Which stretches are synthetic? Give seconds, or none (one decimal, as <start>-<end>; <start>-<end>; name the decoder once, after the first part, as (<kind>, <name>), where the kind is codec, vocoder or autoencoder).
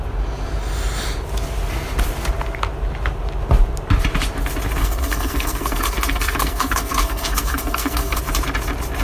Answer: 4.8-8.2 (codec, SNAC)